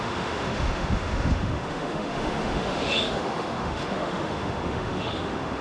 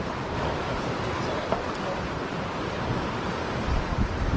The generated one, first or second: first